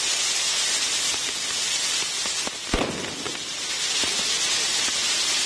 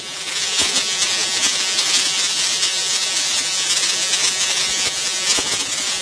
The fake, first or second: second